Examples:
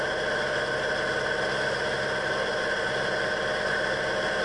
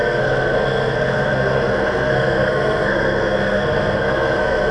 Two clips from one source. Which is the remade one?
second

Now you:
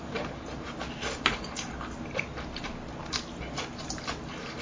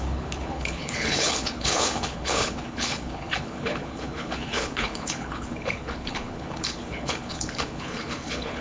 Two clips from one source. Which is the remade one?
second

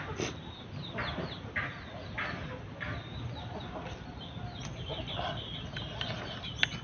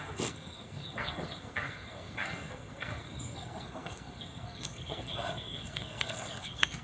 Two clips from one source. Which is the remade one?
second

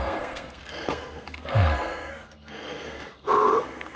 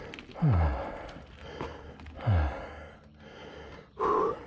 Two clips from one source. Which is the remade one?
first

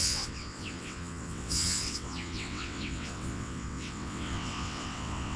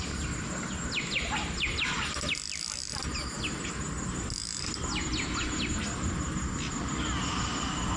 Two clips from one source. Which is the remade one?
first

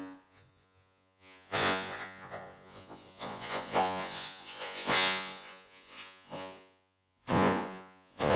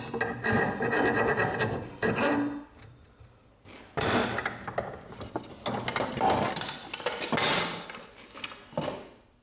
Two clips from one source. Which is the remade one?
first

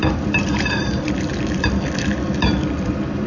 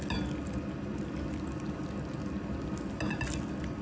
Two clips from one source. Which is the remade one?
first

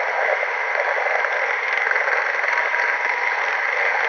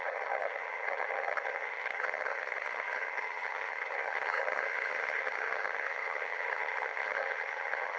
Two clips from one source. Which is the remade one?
second